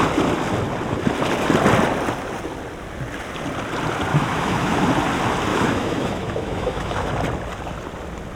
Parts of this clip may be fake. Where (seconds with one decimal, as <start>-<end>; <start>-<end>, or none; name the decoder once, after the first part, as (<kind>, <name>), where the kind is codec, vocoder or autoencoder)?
4.1-4.8 (autoencoder, DAC-VAE); 5.5-7.1